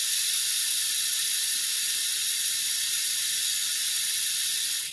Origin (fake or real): real